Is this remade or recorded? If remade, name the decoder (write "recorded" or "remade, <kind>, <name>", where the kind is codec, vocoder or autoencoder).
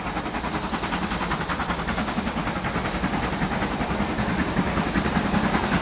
recorded